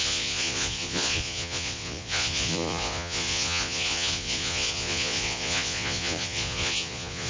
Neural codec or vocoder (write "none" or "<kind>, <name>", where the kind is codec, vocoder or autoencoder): vocoder, Vocos